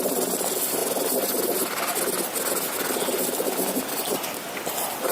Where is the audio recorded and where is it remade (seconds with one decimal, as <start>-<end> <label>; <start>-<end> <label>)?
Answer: 0.0-0.8 remade; 0.8-3.9 recorded; 3.9-5.1 remade